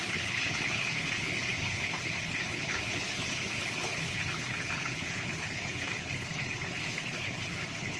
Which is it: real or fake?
fake